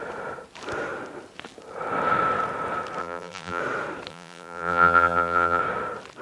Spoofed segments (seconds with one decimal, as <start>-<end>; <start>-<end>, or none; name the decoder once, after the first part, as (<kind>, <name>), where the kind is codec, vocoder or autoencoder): 3.0-3.6 (vocoder, BigVGAN v2); 4.1-5.6